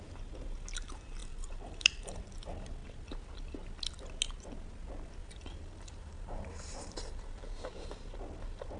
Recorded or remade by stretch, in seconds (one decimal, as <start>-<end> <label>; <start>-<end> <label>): 0.0-1.2 recorded; 1.2-2.2 remade; 2.2-5.2 recorded; 5.2-7.7 remade; 7.7-8.8 recorded